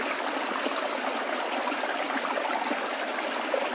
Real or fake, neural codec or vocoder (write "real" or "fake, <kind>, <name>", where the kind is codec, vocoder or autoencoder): real